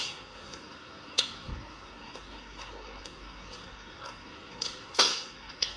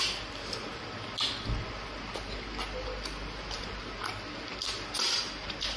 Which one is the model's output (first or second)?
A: first